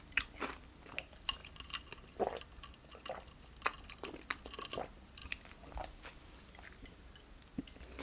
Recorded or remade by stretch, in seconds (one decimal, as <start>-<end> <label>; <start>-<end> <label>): 0.0-5.2 recorded; 5.2-5.8 remade; 5.8-8.0 recorded